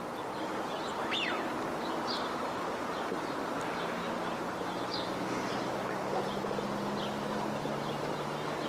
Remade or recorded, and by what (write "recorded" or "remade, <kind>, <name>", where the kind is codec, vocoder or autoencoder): recorded